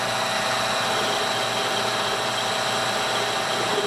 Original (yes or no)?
yes